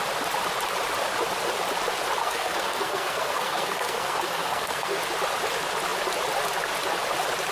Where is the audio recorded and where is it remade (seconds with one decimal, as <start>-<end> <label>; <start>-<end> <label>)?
0.0-2.2 recorded; 2.2-5.0 remade; 5.0-7.5 recorded